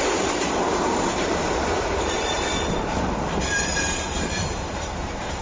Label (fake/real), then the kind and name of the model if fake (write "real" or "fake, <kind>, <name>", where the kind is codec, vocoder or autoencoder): fake, vocoder, BigVGAN v2